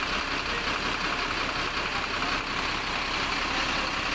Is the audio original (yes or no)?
yes